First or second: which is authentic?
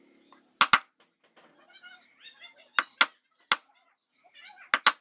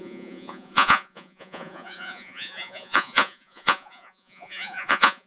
first